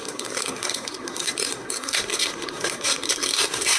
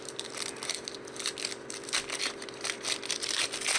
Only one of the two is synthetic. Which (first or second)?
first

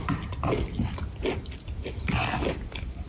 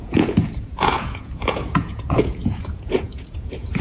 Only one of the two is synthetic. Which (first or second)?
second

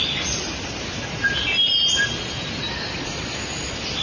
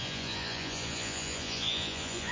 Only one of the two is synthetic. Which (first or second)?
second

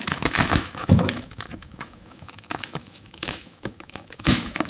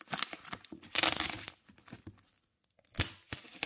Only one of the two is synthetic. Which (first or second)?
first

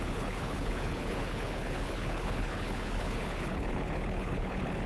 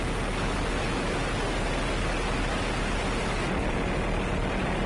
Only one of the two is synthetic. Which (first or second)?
first